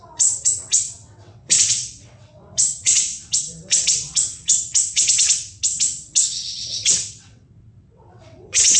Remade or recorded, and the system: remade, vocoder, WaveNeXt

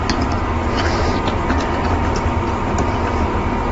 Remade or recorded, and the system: recorded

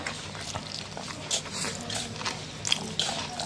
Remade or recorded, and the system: recorded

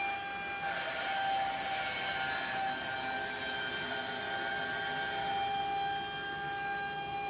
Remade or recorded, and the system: recorded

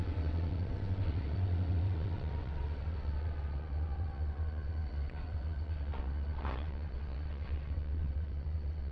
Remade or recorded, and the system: remade, vocoder, WaveNeXt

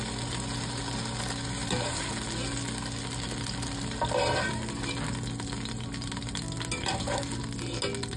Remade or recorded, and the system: recorded